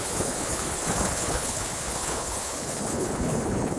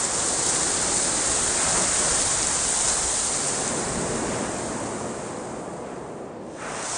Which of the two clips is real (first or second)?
second